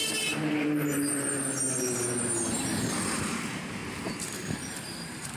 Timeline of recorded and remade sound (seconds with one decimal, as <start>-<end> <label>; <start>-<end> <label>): 0.0-3.2 recorded; 3.2-3.8 remade; 3.8-4.4 recorded; 4.4-5.4 remade